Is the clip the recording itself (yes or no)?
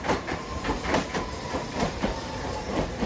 no